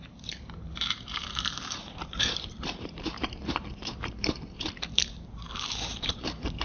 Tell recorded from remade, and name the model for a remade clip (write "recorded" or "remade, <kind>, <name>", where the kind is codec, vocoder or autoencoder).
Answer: remade, vocoder, BigVGAN v2